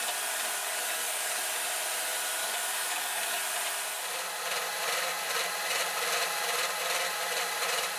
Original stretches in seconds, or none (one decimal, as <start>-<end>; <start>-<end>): 0.0-0.6; 1.4-2.4; 3.4-8.0